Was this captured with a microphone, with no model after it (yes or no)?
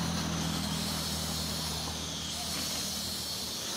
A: yes